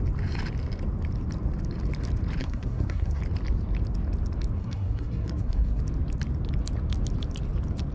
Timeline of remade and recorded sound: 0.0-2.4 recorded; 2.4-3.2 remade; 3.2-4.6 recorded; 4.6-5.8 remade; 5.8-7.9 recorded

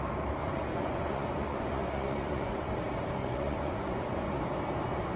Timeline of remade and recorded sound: 0.0-0.4 recorded; 0.4-2.7 remade; 2.7-3.2 recorded; 3.2-4.4 remade; 4.4-5.2 recorded

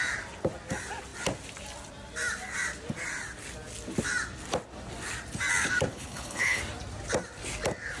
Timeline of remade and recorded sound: 0.0-5.9 recorded; 5.9-6.6 remade; 6.6-8.0 recorded

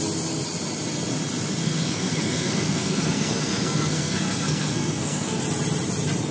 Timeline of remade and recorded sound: 0.0-1.6 recorded; 1.6-5.4 remade; 5.4-6.3 recorded